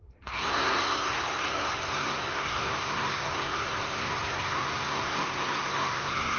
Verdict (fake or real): fake